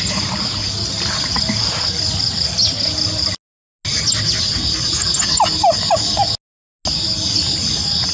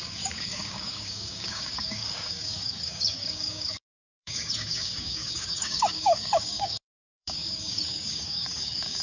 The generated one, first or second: second